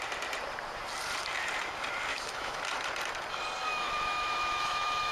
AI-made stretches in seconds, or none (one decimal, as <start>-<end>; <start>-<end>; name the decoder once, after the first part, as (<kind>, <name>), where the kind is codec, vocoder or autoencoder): 2.1-2.6 (autoencoder, DAC-VAE); 3.7-5.1